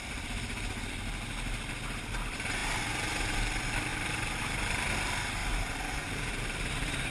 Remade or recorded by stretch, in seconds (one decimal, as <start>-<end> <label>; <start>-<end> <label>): 0.0-3.9 recorded; 3.9-4.4 remade; 4.4-5.4 recorded; 5.4-7.1 remade